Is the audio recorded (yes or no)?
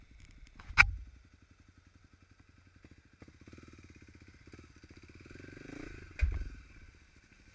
yes